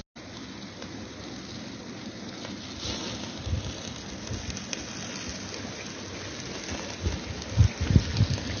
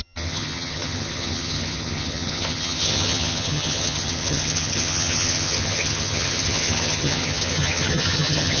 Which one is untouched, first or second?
first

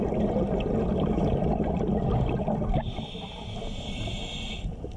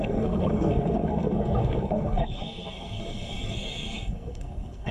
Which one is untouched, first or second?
first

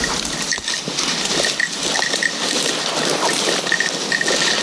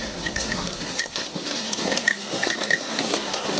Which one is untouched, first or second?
first